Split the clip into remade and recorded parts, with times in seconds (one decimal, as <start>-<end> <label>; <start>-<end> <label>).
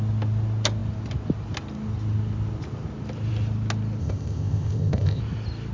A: 0.0-4.0 recorded; 4.0-5.2 remade; 5.2-5.7 recorded